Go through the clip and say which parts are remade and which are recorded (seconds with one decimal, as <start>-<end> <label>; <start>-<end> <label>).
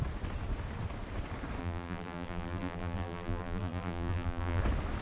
0.0-1.6 recorded; 1.6-4.6 remade; 4.6-5.0 recorded